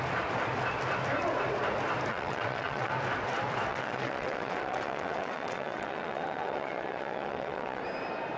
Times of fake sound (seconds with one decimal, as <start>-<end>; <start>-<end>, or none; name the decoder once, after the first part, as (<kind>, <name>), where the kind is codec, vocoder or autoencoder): 2.1-2.9 (vocoder, WaveNeXt); 3.7-7.8